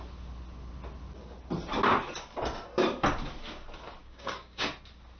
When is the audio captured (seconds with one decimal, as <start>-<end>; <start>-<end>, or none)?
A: 0.0-4.0; 4.7-5.2